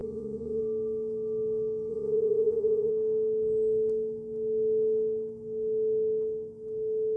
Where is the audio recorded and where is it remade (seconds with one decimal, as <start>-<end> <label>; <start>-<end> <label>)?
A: 0.0-0.6 remade; 0.6-1.9 recorded; 1.9-2.9 remade; 2.9-7.2 recorded